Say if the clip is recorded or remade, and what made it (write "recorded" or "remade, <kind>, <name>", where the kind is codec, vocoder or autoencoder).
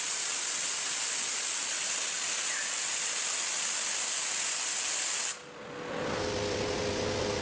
recorded